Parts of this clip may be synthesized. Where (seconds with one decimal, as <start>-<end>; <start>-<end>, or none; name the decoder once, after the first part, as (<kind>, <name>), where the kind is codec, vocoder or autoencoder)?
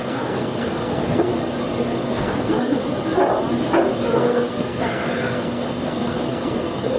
0.0-1.3 (codec, SNAC); 2.1-2.8; 4.1-7.0